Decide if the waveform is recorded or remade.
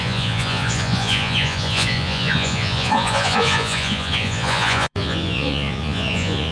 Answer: remade